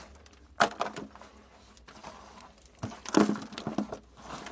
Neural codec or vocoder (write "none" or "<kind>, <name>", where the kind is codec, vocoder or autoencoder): none